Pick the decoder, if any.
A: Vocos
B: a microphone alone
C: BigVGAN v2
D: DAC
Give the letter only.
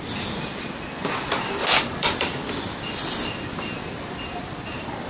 B